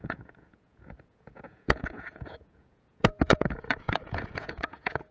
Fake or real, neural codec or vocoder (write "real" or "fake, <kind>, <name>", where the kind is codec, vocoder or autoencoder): fake, vocoder, Vocos